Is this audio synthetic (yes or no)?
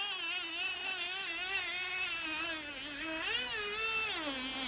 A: no